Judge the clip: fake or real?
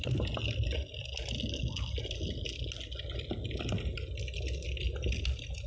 real